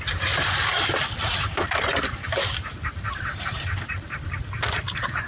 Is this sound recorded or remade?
remade